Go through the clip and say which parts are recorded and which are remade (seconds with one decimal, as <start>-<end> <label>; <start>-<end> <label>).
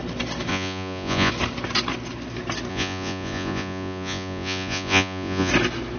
0.0-0.5 recorded; 0.5-1.3 remade; 1.3-2.7 recorded; 2.7-5.5 remade; 5.5-6.0 recorded